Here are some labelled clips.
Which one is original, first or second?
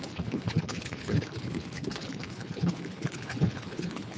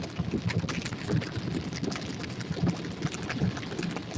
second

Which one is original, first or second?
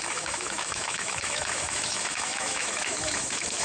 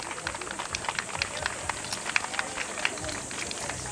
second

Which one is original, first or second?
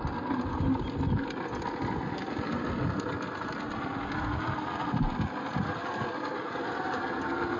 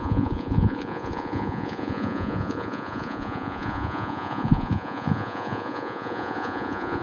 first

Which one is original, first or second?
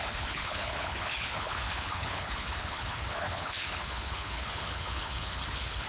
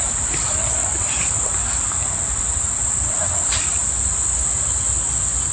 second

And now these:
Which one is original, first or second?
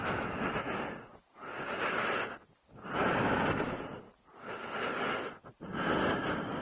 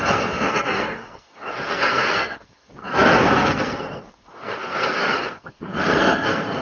first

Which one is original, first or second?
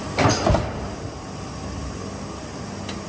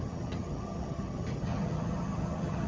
first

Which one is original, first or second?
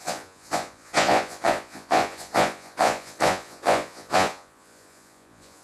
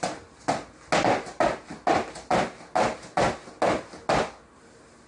second